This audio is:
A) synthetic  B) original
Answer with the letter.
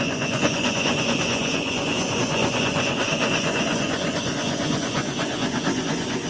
A